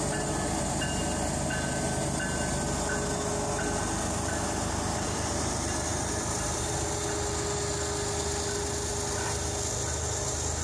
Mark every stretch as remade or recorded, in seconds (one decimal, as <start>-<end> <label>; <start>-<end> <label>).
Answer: 0.0-10.6 recorded